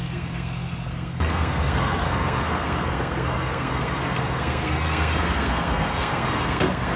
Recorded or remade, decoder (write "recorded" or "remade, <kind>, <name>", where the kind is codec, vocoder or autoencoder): remade, codec, SNAC